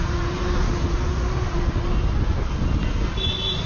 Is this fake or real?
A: real